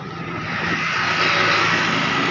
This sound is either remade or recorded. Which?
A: recorded